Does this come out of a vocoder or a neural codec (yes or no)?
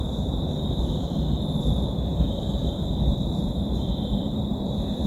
yes